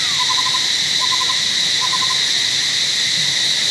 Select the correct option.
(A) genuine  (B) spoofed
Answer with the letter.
A